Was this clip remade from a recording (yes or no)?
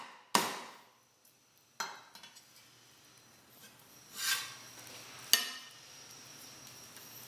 no